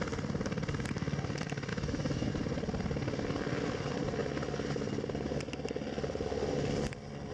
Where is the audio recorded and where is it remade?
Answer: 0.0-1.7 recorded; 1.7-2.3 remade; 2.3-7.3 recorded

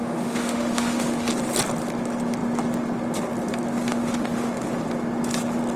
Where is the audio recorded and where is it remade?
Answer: 0.0-1.3 remade; 1.3-3.9 recorded; 3.9-4.5 remade; 4.5-5.8 recorded

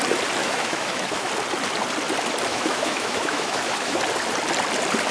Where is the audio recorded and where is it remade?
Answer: 0.0-0.4 recorded; 0.4-1.3 remade; 1.3-2.5 recorded; 2.5-4.0 remade; 4.0-5.1 recorded

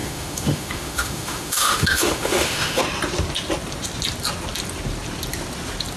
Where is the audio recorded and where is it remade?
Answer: 0.0-2.8 remade; 2.8-6.0 recorded

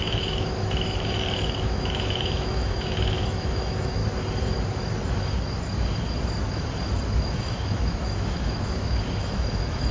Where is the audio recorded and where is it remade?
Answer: 0.0-4.0 remade; 4.0-7.2 recorded; 7.2-9.9 remade